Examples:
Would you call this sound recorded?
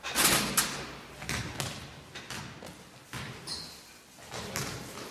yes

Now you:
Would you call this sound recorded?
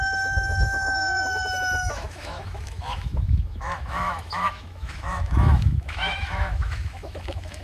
no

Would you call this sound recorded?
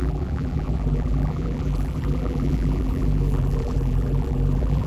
no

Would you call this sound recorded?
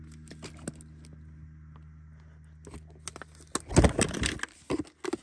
yes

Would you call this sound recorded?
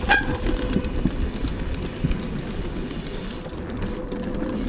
yes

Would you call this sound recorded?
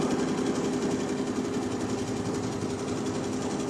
yes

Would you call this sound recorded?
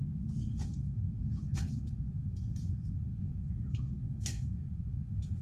no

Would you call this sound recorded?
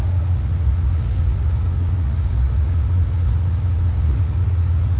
no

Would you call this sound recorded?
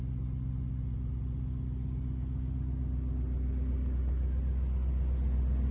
yes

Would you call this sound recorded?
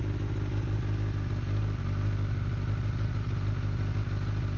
yes